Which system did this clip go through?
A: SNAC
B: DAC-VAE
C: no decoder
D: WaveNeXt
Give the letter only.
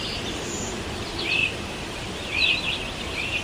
C